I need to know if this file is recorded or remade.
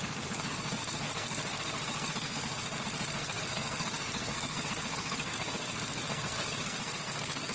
remade